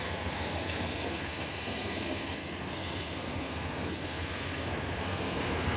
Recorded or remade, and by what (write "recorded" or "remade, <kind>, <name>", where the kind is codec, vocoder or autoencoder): remade, codec, SNAC